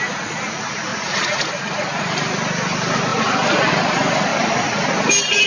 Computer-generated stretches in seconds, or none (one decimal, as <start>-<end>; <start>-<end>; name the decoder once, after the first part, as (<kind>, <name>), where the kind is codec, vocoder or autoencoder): 0.9-2.0 (vocoder, Vocos)